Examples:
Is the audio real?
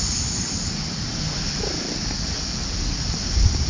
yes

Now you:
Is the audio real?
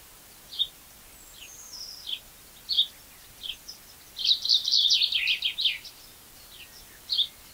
yes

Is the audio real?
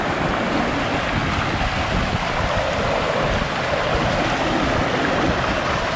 yes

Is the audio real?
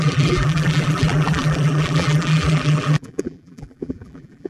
no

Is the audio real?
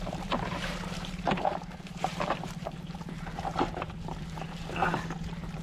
no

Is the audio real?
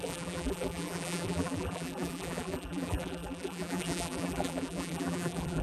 no